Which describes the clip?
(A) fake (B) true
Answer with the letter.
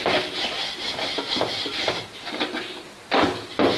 B